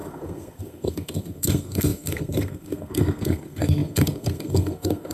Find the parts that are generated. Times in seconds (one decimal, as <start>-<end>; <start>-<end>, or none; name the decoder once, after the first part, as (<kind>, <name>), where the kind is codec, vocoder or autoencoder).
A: 0.0-5.1 (codec, SNAC)